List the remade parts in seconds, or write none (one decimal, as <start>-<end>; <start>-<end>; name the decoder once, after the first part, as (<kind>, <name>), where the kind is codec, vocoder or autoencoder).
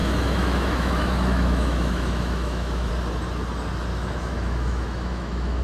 0.0-2.9 (autoencoder, DAC-VAE); 3.9-5.6